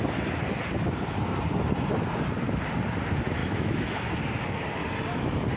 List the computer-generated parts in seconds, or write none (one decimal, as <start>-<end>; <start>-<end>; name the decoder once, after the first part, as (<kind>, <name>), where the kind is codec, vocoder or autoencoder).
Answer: 3.4-4.2 (autoencoder, DAC-VAE)